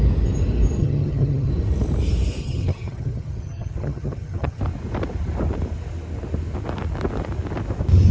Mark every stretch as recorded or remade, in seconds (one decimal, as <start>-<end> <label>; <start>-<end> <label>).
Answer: 0.0-0.8 recorded; 0.8-1.5 remade; 1.5-2.4 recorded; 2.4-4.6 remade; 4.6-8.1 recorded